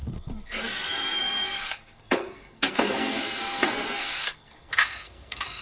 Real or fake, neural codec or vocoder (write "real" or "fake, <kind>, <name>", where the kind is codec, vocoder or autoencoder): fake, codec, SNAC